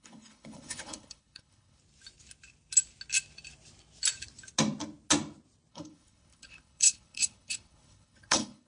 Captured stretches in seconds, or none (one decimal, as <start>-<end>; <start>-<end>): 1.8-5.7